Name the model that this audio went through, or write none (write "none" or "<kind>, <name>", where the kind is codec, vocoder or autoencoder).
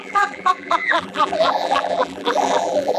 vocoder, BigVGAN v2